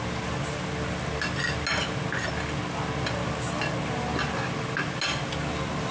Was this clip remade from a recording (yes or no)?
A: no